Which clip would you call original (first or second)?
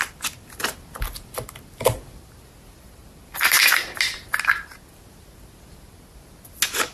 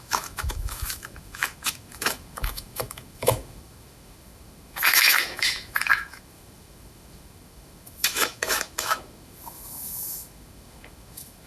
first